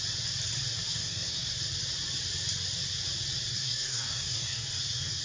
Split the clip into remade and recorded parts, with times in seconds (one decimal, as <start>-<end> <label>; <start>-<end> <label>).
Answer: 0.0-0.9 recorded; 0.9-1.5 remade; 1.5-3.5 recorded; 3.5-5.2 remade